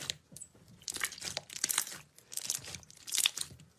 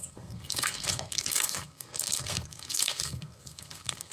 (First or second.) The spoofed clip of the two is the second